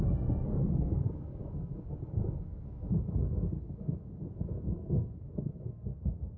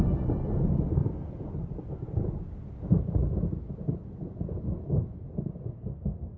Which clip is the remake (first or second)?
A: first